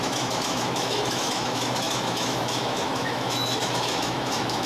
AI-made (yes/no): yes